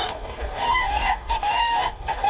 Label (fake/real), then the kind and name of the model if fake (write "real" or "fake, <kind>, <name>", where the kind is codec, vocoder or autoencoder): fake, codec, DAC